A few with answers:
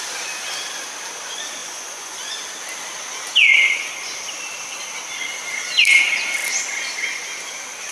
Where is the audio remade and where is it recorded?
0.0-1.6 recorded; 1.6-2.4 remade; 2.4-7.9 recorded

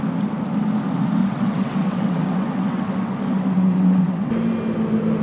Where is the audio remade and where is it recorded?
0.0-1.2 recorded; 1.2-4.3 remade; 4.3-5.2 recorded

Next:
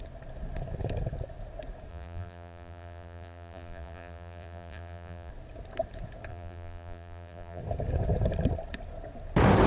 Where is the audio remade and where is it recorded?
0.0-1.9 recorded; 1.9-5.3 remade; 5.3-6.3 recorded; 6.3-7.6 remade; 7.6-9.7 recorded

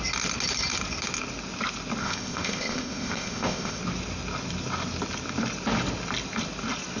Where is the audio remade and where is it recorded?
0.0-2.0 recorded; 2.0-3.8 remade; 3.8-7.0 recorded

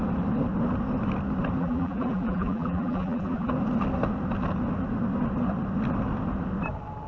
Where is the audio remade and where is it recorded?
0.0-1.6 recorded; 1.6-3.5 remade; 3.5-7.1 recorded

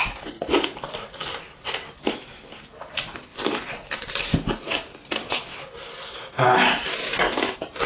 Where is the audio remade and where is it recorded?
0.0-7.9 recorded